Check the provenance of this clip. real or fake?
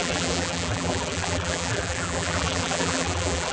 fake